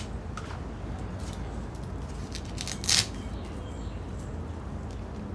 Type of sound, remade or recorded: recorded